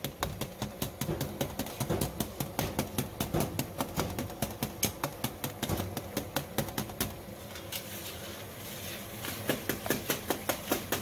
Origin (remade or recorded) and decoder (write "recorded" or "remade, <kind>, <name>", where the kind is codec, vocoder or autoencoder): recorded